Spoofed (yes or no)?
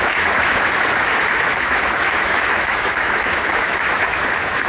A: yes